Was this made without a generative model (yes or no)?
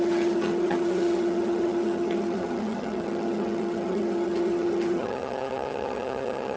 no